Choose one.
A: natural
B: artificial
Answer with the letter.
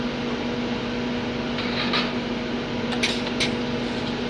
A